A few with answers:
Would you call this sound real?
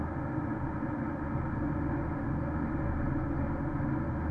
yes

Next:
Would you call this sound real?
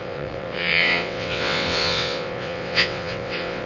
no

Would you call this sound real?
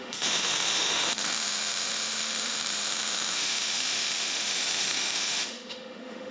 no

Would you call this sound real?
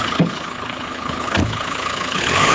no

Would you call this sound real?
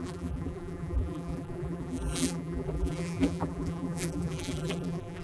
no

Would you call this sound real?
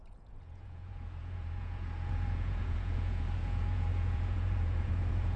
no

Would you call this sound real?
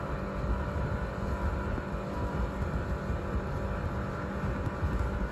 yes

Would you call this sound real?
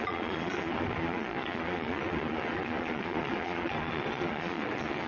no